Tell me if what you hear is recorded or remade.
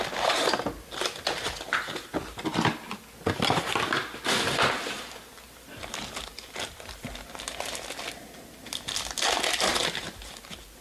recorded